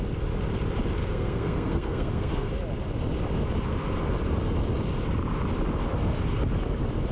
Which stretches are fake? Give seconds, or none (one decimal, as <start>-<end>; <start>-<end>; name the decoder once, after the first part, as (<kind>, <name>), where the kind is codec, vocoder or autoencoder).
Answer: 1.0-2.5 (codec, SNAC)